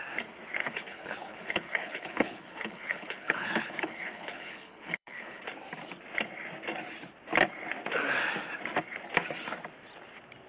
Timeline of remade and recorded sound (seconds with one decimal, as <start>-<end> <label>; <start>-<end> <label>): 0.0-0.6 recorded; 0.6-5.4 remade; 5.4-10.5 recorded